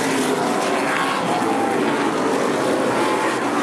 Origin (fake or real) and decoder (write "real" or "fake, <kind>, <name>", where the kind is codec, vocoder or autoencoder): real